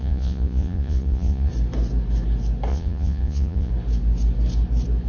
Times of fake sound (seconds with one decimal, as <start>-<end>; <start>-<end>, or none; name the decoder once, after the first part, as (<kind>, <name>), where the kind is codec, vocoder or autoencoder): 0.0-1.5 (vocoder, Vocos); 2.7-3.7